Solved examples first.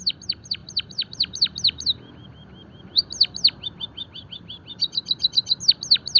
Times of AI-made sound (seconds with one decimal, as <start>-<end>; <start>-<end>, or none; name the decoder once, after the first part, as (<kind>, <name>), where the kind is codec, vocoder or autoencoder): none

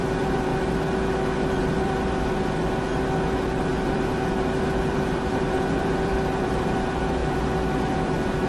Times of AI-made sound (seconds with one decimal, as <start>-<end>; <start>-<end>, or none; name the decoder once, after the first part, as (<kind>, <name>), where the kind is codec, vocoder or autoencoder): 0.0-0.5 (vocoder, BigVGAN v2); 1.6-2.3; 3.7-7.2; 7.9-8.5

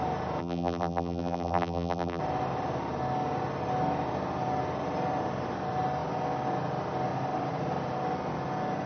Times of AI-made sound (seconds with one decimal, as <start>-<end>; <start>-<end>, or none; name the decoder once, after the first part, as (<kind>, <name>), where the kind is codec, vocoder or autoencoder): 0.4-2.2 (vocoder, BigVGAN v2)